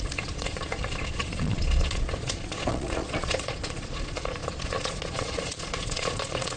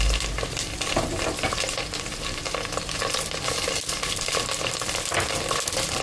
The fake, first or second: first